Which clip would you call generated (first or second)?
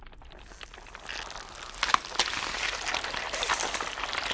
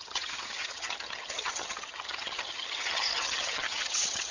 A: second